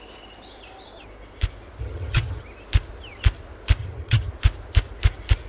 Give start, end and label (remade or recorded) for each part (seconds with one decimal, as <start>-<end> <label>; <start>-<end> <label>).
0.0-1.8 recorded; 1.8-2.4 remade; 2.4-3.8 recorded; 3.8-4.3 remade; 4.3-5.5 recorded